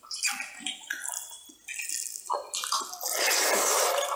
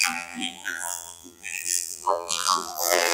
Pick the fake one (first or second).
second